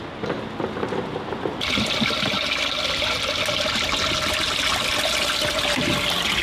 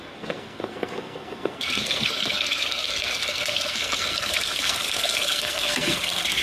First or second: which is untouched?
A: first